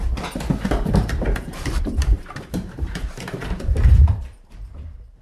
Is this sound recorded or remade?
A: remade